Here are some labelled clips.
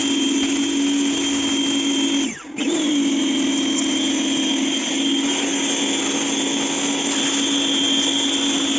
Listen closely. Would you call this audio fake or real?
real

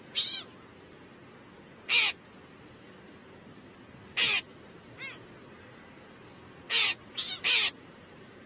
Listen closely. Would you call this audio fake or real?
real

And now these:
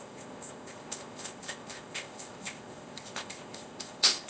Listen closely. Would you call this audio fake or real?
fake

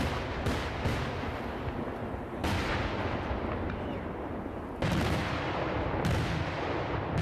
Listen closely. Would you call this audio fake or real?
real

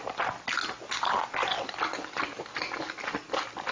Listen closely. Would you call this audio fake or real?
real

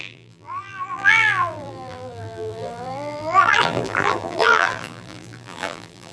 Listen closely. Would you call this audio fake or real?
fake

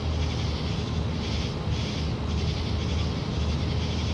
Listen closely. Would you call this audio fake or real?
real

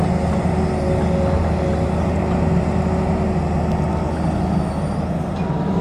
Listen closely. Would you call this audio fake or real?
real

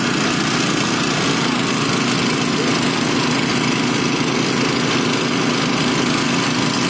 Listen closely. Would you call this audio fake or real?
real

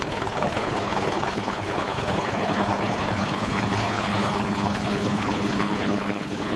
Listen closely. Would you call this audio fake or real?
fake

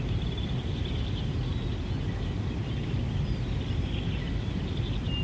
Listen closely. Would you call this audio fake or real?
real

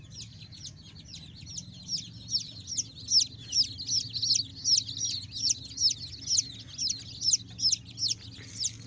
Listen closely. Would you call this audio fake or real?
real